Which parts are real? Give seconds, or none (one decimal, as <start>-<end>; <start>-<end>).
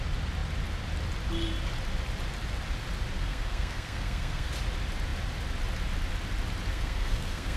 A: 0.0-3.2; 4.5-6.7